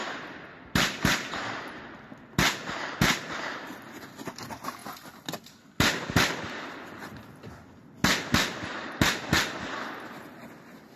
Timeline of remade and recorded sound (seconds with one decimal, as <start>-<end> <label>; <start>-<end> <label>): 0.0-11.0 recorded